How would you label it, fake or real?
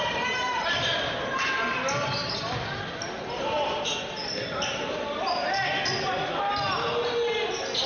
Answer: real